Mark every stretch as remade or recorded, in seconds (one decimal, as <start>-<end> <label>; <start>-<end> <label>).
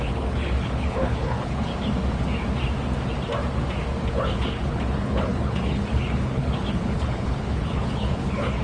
0.0-1.7 remade; 1.7-4.1 recorded; 4.1-8.6 remade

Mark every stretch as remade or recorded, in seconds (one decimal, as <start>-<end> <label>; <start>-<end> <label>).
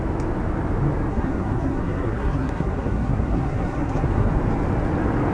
0.0-1.1 recorded; 1.1-4.3 remade; 4.3-5.3 recorded